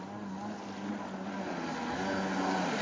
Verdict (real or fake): real